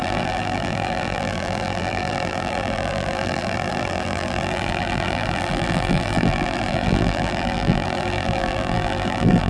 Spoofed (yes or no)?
yes